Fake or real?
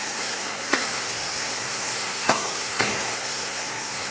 fake